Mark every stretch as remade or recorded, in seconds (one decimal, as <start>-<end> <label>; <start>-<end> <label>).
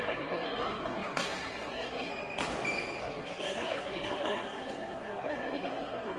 0.0-2.1 remade; 2.1-3.0 recorded; 3.0-6.2 remade